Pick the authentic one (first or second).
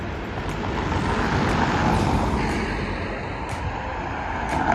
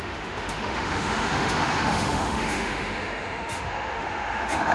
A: first